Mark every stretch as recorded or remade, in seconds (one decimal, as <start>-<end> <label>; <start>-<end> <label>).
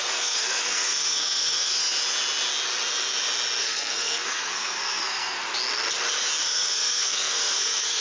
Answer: 0.0-1.8 remade; 1.8-3.6 recorded; 3.6-5.4 remade; 5.4-6.4 recorded; 6.4-8.0 remade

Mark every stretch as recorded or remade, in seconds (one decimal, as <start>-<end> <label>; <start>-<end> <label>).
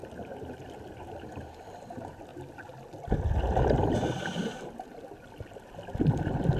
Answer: 0.0-0.9 recorded; 0.9-2.3 remade; 2.3-6.6 recorded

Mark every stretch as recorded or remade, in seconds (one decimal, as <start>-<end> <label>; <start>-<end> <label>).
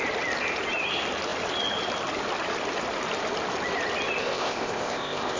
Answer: 0.0-4.2 recorded; 4.2-5.4 remade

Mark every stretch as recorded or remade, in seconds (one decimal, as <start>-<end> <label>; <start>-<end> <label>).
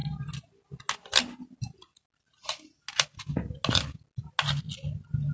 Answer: 0.0-5.3 recorded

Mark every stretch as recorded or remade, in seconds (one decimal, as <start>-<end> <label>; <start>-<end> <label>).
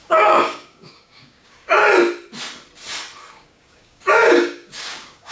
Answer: 0.0-1.8 remade; 1.8-3.3 recorded; 3.3-5.3 remade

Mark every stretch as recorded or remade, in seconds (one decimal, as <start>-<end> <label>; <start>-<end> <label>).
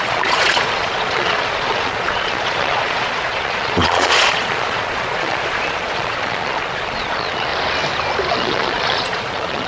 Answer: 0.0-7.5 remade; 7.5-8.3 recorded; 8.3-9.7 remade